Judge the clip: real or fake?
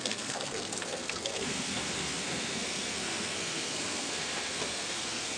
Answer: fake